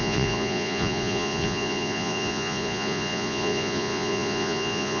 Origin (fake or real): fake